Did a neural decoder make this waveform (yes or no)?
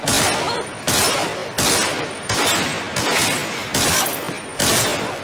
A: no